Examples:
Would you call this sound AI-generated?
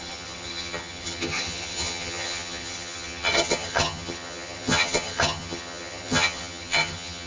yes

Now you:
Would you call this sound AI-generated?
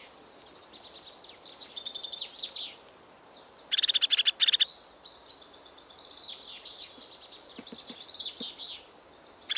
no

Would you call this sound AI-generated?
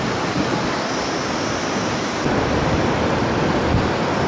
no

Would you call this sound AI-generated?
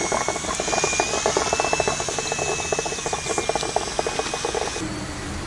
no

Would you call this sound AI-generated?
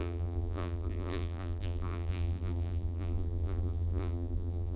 yes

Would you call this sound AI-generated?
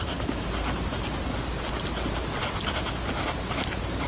no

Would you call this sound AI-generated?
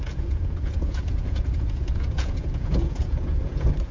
yes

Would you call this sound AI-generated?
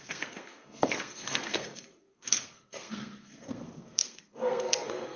yes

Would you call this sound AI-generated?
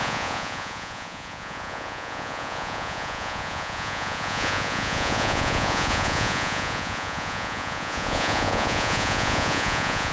yes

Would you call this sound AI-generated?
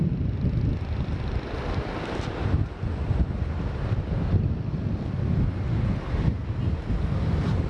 no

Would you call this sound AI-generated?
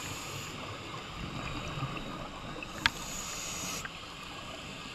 no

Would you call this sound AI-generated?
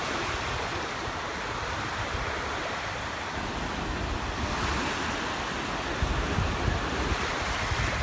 no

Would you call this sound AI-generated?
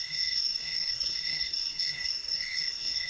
yes